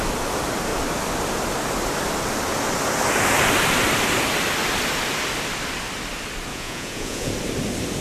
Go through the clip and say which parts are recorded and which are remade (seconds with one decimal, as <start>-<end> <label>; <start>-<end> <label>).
0.0-6.5 recorded; 6.5-7.3 remade; 7.3-8.0 recorded